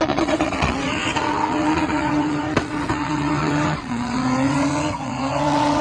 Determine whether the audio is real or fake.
fake